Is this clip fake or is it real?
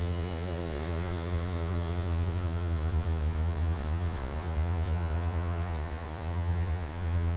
fake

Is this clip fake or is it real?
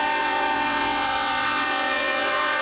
fake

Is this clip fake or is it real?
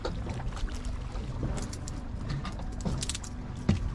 real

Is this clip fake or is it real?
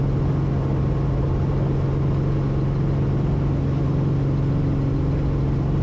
real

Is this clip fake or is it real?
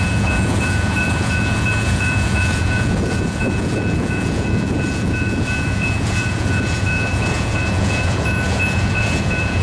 fake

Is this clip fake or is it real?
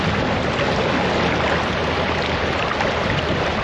real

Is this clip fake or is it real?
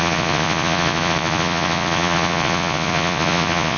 fake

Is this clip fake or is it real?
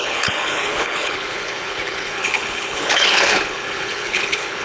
fake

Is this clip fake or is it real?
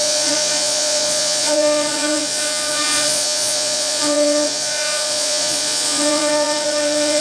fake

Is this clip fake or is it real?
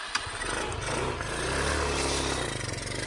real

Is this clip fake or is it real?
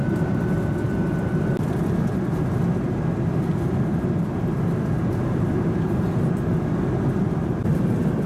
real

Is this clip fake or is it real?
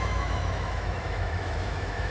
fake